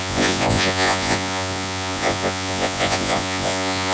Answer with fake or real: fake